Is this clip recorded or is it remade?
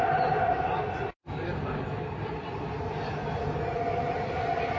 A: recorded